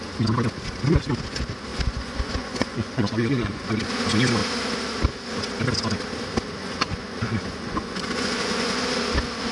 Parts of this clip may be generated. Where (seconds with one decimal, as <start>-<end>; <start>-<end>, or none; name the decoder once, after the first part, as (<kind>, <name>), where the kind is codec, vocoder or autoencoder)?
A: 1.7-3.7 (vocoder, Vocos); 6.6-8.8